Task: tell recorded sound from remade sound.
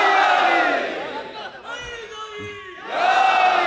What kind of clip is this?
recorded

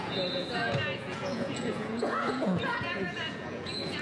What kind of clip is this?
remade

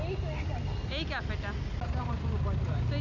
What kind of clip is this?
recorded